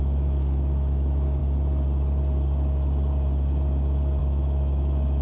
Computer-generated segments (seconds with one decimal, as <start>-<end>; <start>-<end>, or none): 0.0-1.4; 4.2-5.2